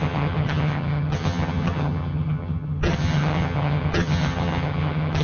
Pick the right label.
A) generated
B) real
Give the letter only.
A